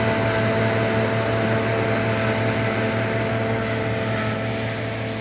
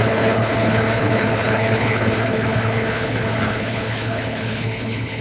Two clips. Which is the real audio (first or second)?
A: first